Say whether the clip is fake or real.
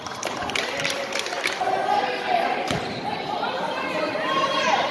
fake